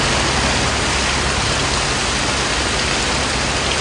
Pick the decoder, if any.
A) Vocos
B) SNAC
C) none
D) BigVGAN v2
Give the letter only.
C